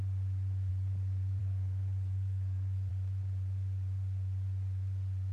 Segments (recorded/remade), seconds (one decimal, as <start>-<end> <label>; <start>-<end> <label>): 0.0-1.4 recorded; 1.4-2.9 remade; 2.9-5.3 recorded